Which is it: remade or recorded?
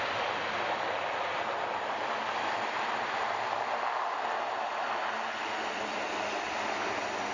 recorded